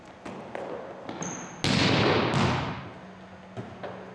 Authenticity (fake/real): real